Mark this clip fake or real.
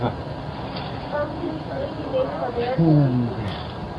real